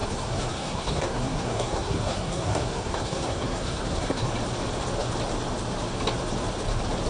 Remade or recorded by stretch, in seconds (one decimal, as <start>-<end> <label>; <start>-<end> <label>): 0.0-4.3 remade; 4.3-7.1 recorded